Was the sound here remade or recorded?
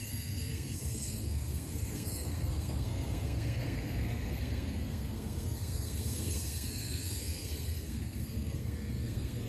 remade